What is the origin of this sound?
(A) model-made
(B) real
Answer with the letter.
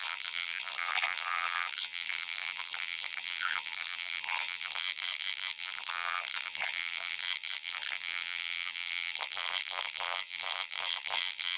A